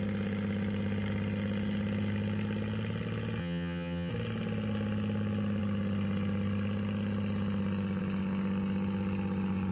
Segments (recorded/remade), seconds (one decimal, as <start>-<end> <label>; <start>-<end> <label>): 0.0-3.4 recorded; 3.4-4.1 remade; 4.1-9.7 recorded